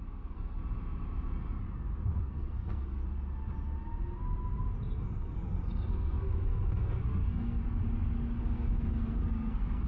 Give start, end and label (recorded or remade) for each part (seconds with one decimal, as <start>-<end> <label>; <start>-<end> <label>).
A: 0.0-0.6 remade; 0.6-2.2 recorded; 2.2-3.0 remade; 3.0-5.0 recorded; 5.0-7.6 remade; 7.6-8.4 recorded; 8.4-9.9 remade